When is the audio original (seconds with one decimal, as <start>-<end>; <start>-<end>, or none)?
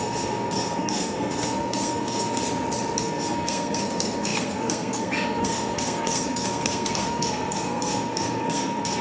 2.4-3.0